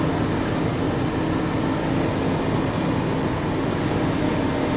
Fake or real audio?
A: real